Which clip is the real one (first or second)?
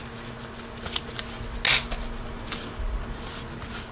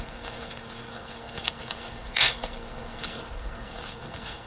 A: first